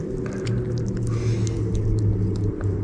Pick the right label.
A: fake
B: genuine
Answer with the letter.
B